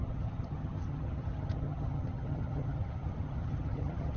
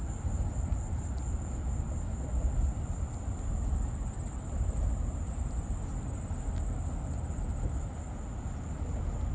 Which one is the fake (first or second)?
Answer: first